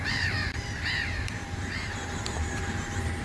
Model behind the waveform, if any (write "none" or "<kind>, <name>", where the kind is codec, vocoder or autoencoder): vocoder, BigVGAN v2